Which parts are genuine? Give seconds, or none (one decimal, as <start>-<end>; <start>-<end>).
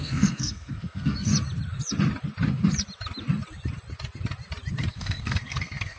1.3-4.9